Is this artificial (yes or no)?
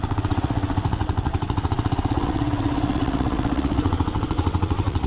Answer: yes